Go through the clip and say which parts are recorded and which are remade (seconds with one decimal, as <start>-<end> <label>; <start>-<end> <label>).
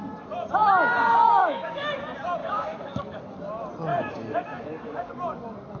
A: 0.0-1.4 recorded; 1.4-1.9 remade; 1.9-2.4 recorded; 2.4-3.2 remade; 3.2-3.9 recorded; 3.9-5.1 remade; 5.1-5.8 recorded